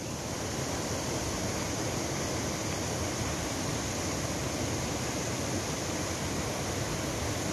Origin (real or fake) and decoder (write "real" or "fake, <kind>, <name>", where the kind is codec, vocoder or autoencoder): real